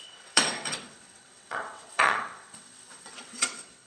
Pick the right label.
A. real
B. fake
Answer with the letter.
B